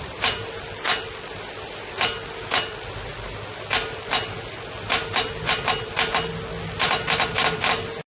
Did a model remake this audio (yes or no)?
no